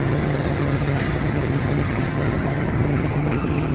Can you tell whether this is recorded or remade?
remade